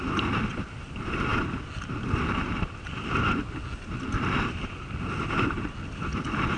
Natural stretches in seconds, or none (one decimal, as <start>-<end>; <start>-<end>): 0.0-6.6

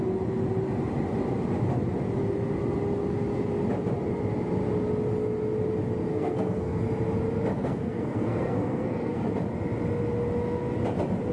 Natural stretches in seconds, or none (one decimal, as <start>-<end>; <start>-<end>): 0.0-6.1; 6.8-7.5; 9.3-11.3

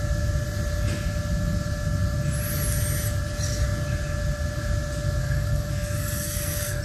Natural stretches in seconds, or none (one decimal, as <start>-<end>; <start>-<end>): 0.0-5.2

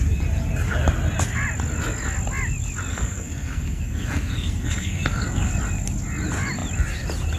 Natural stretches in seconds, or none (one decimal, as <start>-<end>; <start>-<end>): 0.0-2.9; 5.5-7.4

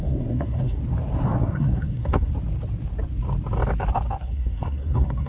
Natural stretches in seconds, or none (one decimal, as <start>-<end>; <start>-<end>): 0.8-1.4; 2.3-4.2

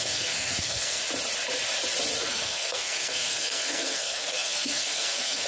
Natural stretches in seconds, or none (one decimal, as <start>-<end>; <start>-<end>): 1.0-2.2

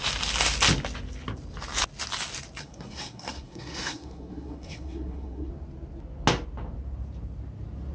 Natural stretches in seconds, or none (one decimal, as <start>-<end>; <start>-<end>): 0.0-2.6; 5.5-7.9

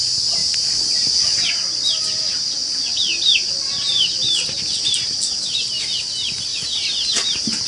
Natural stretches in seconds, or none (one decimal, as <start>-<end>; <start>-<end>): 0.0-7.7